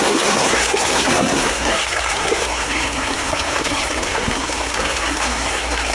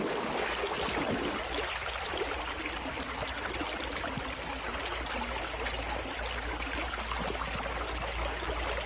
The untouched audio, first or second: second